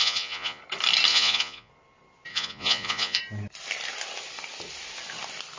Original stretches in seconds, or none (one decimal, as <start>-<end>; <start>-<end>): 0.6-1.1; 1.7-2.3; 3.2-5.6